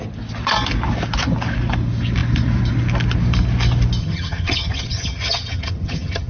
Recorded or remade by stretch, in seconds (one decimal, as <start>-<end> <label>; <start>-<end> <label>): 0.0-4.0 recorded; 4.0-6.3 remade